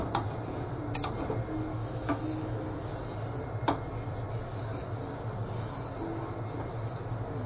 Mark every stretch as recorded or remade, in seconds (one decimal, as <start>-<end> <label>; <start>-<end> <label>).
0.0-1.8 recorded; 1.8-2.9 remade; 2.9-7.5 recorded